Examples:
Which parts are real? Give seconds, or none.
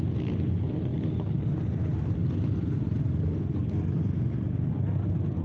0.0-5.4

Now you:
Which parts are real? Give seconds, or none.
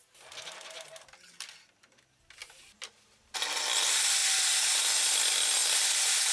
0.0-6.3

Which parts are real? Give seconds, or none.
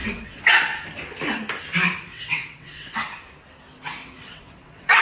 0.5-2.1; 2.9-4.0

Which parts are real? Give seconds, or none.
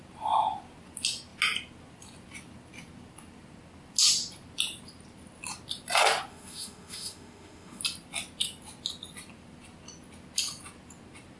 0.0-6.3; 7.8-11.4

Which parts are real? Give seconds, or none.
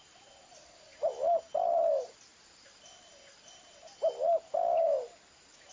0.0-5.7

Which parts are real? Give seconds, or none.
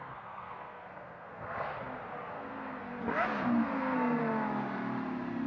1.7-2.3; 2.9-3.6; 4.2-5.5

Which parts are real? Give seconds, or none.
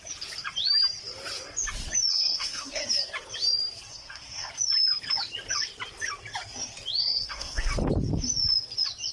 0.0-2.1; 2.8-3.9; 4.5-7.0; 7.7-9.1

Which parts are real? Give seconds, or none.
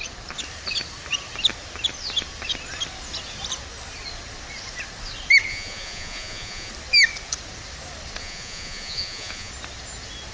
0.0-5.5; 6.7-8.2; 9.5-10.3